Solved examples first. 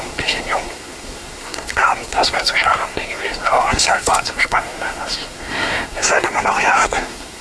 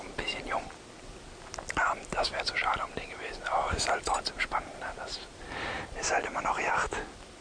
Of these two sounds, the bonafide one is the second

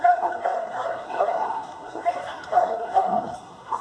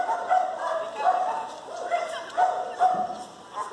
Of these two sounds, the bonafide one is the second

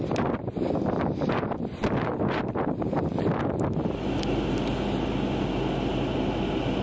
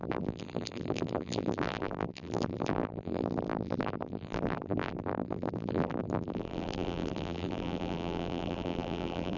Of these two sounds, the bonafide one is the first